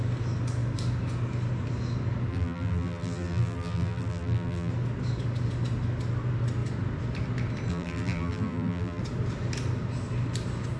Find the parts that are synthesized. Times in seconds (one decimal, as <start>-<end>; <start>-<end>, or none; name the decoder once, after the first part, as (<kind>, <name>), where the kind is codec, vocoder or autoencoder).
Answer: 2.3-4.7 (vocoder, BigVGAN v2); 7.7-9.0